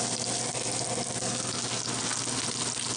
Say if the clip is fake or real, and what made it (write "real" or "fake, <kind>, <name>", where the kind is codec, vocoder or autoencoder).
real